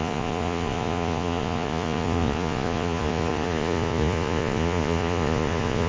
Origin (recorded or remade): remade